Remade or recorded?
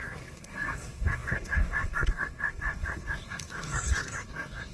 remade